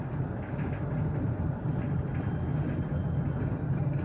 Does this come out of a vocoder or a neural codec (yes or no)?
no